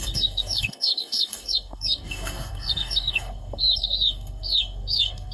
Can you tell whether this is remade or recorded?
remade